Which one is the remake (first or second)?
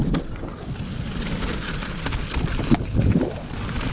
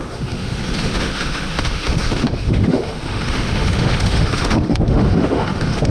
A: second